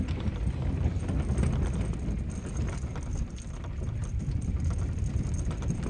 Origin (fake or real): real